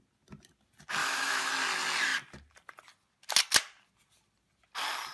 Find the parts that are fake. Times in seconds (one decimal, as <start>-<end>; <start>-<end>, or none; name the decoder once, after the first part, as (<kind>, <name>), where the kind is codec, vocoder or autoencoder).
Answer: 1.0-1.5 (autoencoder, DAC-VAE)